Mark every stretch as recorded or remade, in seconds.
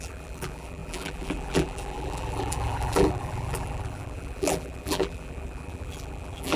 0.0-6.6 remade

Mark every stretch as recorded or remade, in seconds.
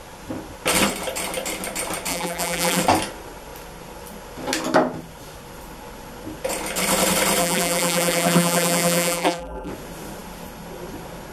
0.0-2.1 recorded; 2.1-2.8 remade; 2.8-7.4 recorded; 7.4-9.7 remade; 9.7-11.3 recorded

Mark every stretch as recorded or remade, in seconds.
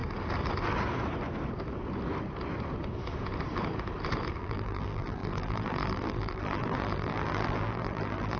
0.0-4.4 recorded; 4.4-8.4 remade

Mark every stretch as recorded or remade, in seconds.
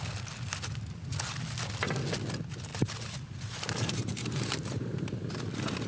0.0-2.7 recorded; 2.7-5.3 remade; 5.3-5.9 recorded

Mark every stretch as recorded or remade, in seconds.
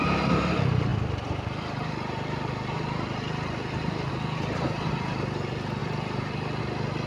0.0-5.8 recorded; 5.8-6.6 remade; 6.6-7.1 recorded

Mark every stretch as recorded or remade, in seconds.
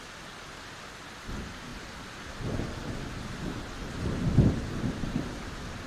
0.0-5.9 recorded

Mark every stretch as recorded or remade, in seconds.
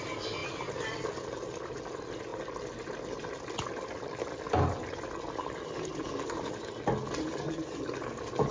0.0-0.4 recorded; 0.4-1.3 remade; 1.3-8.5 recorded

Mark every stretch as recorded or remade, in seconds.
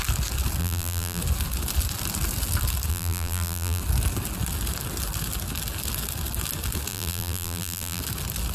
0.0-0.6 recorded; 0.6-1.2 remade; 1.2-2.9 recorded; 2.9-3.8 remade; 3.8-6.9 recorded; 6.9-8.0 remade; 8.0-8.5 recorded